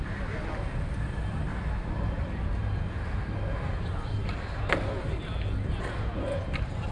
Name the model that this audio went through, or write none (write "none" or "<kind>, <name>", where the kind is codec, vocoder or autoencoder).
none